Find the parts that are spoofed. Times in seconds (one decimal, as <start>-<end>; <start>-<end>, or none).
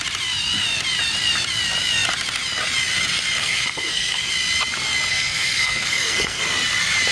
3.4-4.3; 5.1-6.4